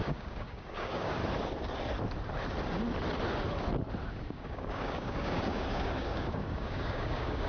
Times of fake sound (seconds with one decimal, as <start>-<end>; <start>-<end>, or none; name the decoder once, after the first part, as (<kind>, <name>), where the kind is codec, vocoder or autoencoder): 0.0-1.2 (codec, DAC); 4.1-7.5